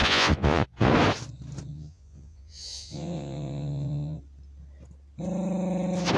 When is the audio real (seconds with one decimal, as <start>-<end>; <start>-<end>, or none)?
0.9-1.7; 4.2-6.2